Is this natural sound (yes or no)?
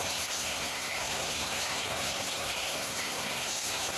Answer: no